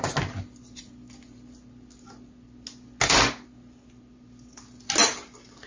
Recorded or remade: recorded